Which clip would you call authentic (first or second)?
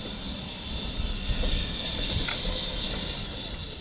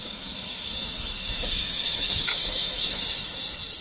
first